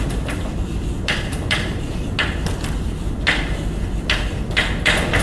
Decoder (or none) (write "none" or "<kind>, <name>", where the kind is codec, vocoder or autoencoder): none